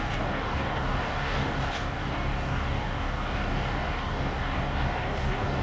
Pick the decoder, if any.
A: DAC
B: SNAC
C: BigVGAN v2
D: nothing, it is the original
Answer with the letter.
A